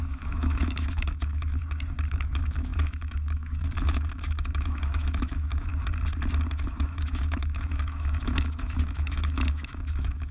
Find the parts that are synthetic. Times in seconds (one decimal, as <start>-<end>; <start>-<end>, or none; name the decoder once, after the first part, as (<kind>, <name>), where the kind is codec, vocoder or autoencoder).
0.0-1.6 (autoencoder, DAC-VAE); 2.1-5.7; 6.5-10.3